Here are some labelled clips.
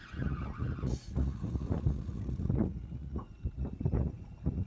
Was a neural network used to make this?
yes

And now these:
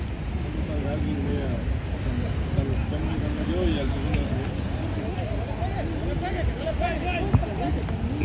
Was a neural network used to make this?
no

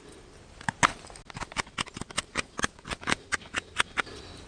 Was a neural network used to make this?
no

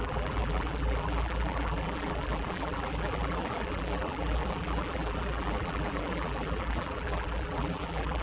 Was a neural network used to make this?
yes